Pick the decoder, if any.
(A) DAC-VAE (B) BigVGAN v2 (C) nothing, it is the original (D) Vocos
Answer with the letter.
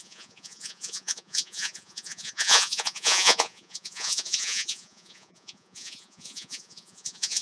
D